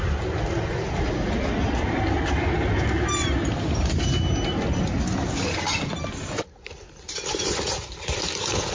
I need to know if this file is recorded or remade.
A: recorded